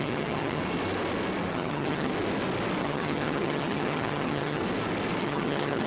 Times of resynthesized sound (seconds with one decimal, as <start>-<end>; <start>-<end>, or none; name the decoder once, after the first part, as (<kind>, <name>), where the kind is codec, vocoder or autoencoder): 0.0-0.6 (vocoder, HiFi-GAN); 1.5-2.1; 2.8-4.6; 5.2-5.9